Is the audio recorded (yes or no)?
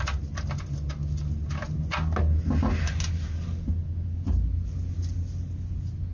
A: yes